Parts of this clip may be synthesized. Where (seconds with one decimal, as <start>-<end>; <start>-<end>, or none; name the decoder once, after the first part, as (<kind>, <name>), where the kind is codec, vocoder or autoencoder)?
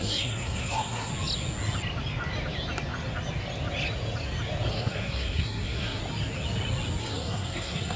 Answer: 0.0-1.1 (codec, SNAC); 4.7-6.0; 7.0-8.0